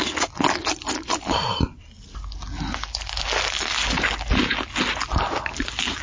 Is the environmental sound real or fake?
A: real